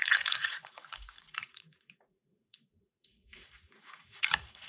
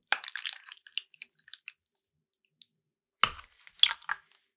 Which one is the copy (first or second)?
first